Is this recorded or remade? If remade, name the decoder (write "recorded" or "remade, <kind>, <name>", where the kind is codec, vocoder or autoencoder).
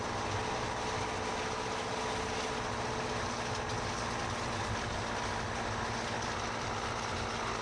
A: recorded